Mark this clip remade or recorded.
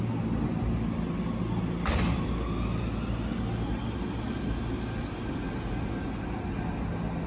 recorded